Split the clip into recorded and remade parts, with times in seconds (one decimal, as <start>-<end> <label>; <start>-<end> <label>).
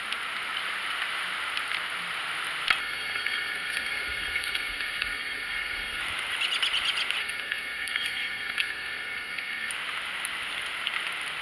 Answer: 0.0-2.8 recorded; 2.8-6.0 remade; 6.0-7.2 recorded; 7.2-9.7 remade; 9.7-11.4 recorded